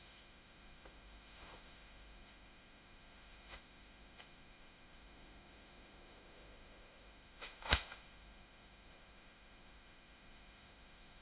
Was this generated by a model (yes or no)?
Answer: yes